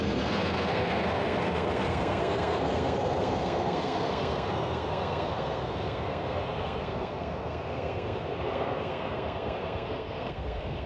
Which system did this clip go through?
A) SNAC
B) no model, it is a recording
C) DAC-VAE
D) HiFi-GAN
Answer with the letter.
A